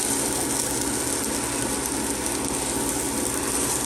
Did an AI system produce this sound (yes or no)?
no